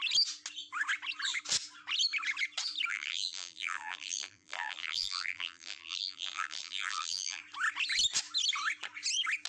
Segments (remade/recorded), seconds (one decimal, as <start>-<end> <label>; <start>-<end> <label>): 0.0-2.9 recorded; 2.9-7.4 remade; 7.4-9.5 recorded